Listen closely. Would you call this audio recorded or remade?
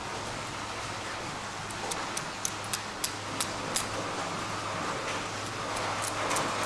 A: recorded